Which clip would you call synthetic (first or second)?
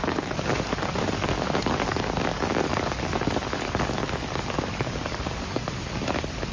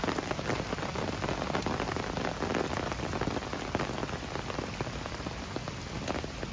first